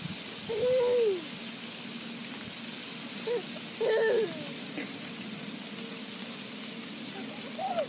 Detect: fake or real real